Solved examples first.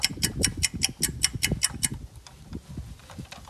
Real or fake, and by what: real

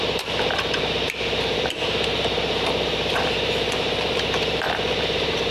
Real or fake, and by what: fake, vocoder, BigVGAN v2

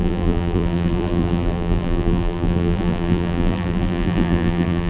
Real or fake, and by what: fake, vocoder, BigVGAN v2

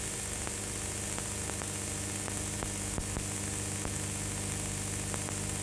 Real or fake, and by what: real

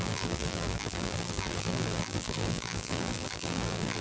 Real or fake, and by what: fake, vocoder, BigVGAN v2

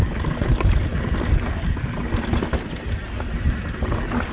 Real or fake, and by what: real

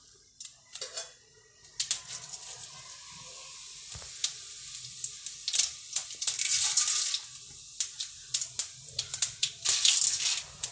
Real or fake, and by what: real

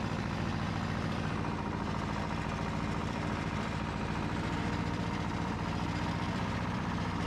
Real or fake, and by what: fake, vocoder, BigVGAN v2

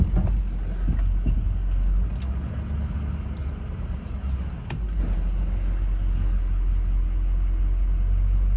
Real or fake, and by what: real